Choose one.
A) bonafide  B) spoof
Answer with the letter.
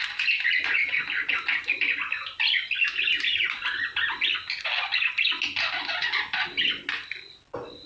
A